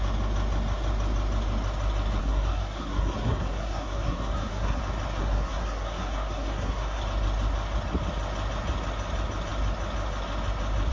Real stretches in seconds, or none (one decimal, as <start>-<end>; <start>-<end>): 0.0-2.2; 4.8-5.2; 7.0-10.9